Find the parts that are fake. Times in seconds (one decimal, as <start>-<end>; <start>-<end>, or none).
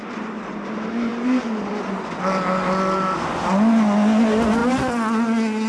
none